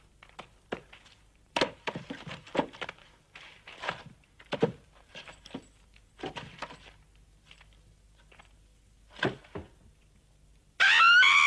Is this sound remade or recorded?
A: recorded